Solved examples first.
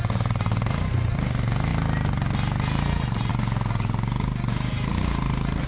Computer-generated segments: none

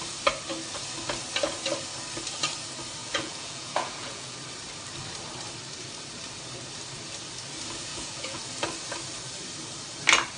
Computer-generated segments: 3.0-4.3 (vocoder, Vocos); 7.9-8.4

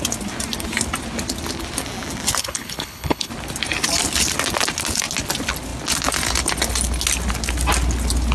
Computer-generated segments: 2.4-3.3 (codec, HILCodec)